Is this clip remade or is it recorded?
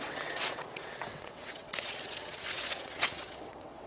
remade